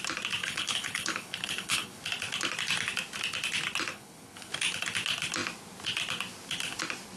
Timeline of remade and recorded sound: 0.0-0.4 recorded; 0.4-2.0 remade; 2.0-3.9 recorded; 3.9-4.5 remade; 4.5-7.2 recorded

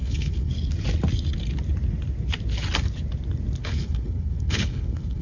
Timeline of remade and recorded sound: 0.0-0.5 remade; 0.5-3.6 recorded; 3.6-5.2 remade

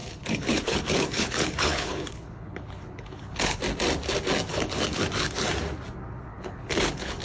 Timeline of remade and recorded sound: 0.0-3.6 remade; 3.6-4.5 recorded; 4.5-5.0 remade; 5.0-6.3 recorded; 6.3-7.2 remade

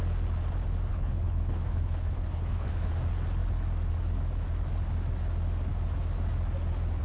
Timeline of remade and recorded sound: 0.0-0.9 recorded; 0.9-2.9 remade; 2.9-7.0 recorded

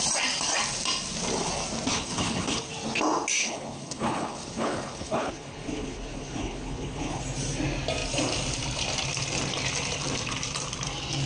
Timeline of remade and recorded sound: 0.0-1.9 recorded; 1.9-2.7 remade; 2.7-3.4 recorded; 3.4-7.2 remade; 7.2-11.3 recorded